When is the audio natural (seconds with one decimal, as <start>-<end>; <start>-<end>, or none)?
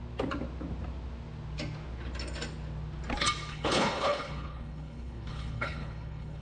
0.0-3.5